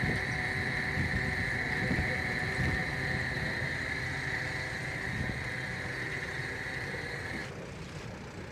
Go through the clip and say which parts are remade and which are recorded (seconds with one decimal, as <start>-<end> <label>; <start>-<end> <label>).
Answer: 0.0-8.5 recorded